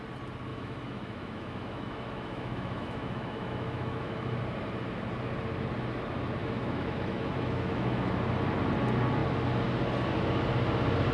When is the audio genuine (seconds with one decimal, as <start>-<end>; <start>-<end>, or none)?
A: 0.0-0.5; 4.4-6.4; 8.1-11.1